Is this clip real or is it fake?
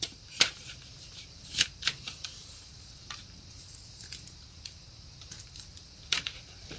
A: fake